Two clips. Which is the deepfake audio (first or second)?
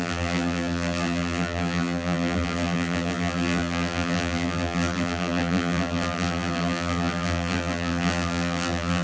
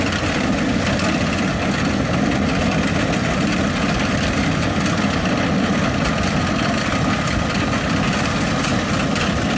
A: first